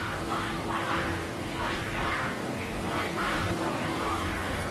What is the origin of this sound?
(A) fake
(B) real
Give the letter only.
A